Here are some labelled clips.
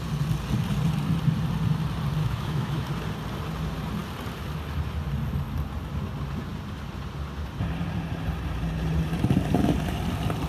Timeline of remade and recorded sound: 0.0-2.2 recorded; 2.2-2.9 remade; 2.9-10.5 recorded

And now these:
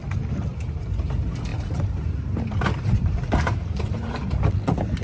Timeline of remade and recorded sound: 0.0-0.5 recorded; 0.5-1.1 remade; 1.1-1.5 recorded; 1.5-4.4 remade; 4.4-5.0 recorded